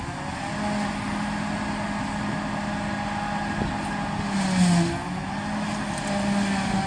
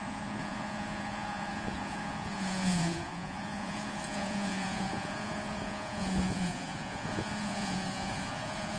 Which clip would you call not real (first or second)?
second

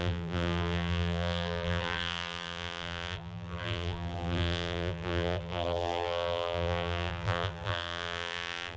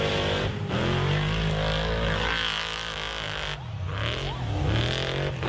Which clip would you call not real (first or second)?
first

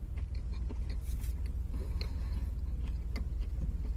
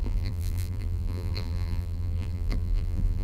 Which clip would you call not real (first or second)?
second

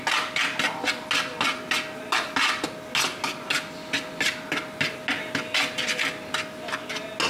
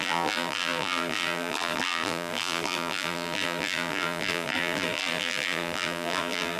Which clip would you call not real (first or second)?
second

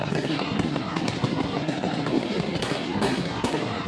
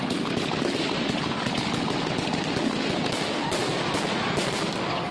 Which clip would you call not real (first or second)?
first